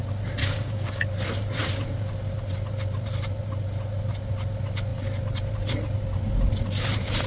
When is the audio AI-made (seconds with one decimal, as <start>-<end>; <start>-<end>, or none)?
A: 0.4-1.0